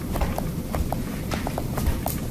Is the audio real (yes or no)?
yes